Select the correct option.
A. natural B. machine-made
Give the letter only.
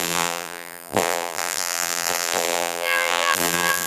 B